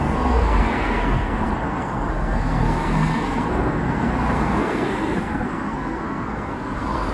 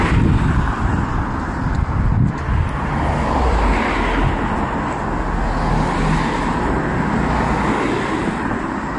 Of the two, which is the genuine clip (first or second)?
second